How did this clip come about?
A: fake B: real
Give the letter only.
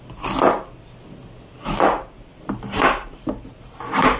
B